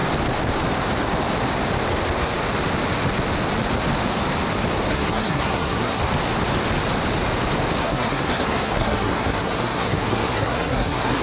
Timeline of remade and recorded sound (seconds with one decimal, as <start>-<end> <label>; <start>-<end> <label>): 0.0-4.9 recorded; 4.9-6.0 remade; 6.0-7.8 recorded; 7.8-11.2 remade